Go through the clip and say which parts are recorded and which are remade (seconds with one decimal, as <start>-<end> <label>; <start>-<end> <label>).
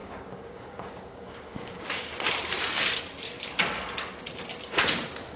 0.0-2.1 remade; 2.1-5.4 recorded